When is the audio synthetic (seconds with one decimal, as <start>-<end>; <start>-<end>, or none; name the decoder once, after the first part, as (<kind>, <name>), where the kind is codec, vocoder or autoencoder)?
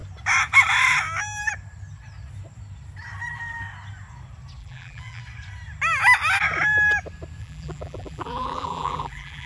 4.6-5.2 (vocoder, BigVGAN v2); 7.4-9.5